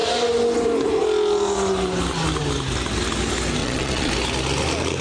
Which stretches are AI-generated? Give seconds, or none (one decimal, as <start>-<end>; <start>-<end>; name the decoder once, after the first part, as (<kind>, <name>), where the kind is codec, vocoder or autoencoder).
3.6-4.1 (vocoder, Vocos)